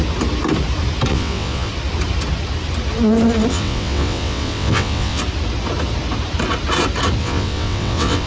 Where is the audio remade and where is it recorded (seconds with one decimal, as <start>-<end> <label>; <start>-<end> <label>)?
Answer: 0.0-1.1 recorded; 1.1-1.7 remade; 1.7-3.5 recorded; 3.5-5.2 remade; 5.2-7.2 recorded; 7.2-8.3 remade